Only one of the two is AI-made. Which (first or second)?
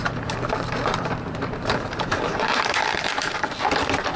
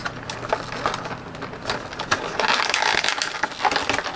first